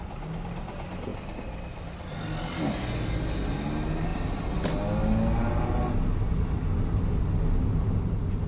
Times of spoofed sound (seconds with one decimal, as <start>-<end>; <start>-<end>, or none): none